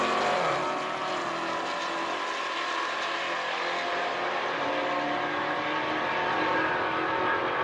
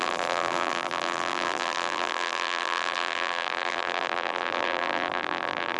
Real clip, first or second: first